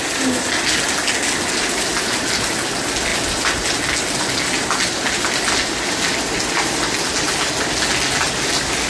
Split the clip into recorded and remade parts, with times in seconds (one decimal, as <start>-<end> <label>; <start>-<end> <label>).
0.0-8.9 recorded